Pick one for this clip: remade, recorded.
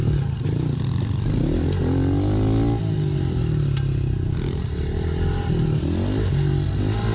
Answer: recorded